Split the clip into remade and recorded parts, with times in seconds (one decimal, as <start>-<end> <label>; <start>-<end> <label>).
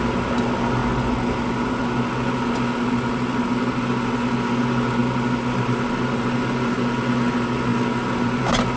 0.0-8.8 recorded